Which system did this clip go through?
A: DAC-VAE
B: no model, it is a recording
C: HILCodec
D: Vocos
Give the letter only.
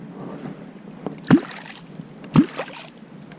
B